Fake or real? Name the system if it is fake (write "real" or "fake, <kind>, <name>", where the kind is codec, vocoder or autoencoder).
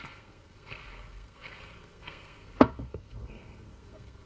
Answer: fake, codec, SNAC